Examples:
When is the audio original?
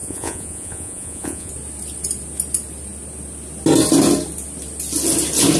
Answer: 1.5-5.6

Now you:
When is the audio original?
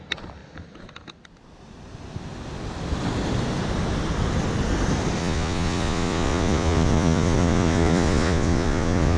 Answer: 0.0-5.2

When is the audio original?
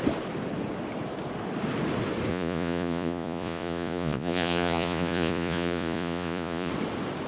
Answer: 0.0-2.3; 6.7-7.3